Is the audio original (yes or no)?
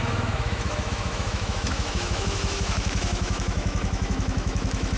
no